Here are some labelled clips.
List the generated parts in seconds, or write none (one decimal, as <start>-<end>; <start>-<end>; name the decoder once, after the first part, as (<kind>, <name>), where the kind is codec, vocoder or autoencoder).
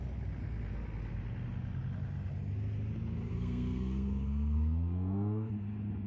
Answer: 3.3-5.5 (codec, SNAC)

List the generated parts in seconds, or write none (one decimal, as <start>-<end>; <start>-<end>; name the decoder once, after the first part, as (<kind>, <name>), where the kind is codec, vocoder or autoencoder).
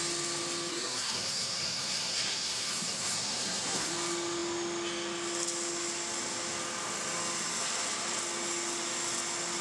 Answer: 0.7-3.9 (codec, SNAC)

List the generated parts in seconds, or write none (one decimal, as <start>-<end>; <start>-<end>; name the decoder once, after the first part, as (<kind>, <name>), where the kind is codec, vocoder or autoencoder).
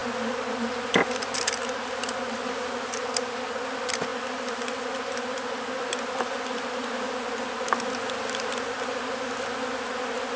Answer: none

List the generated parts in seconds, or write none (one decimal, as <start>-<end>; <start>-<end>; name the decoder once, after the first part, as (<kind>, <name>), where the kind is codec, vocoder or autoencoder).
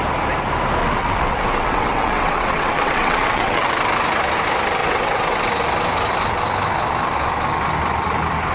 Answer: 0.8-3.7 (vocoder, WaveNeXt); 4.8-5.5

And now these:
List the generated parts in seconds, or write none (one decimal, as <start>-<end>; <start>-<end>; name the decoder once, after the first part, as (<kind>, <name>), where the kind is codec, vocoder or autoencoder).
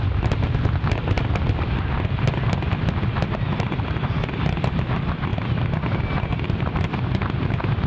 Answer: none